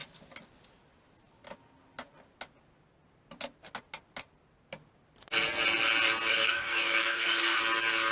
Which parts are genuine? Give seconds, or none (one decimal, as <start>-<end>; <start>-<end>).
0.0-6.3; 7.6-8.1